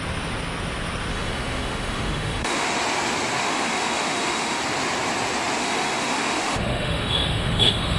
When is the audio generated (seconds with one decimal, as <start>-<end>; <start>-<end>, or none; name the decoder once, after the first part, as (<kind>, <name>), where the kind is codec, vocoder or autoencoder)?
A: 1.1-2.8 (autoencoder, DAC-VAE); 3.4-4.6; 5.6-8.0